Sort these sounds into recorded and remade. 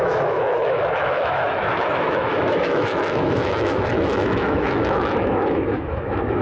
remade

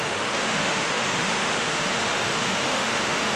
remade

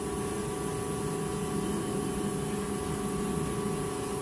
recorded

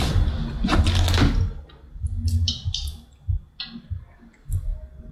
recorded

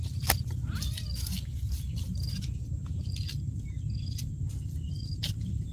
recorded